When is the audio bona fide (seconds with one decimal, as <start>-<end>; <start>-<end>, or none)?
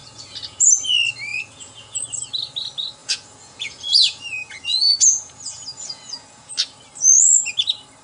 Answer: 0.7-1.3; 2.0-3.0; 6.5-8.0